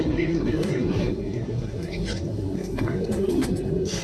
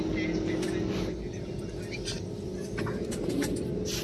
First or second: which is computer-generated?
first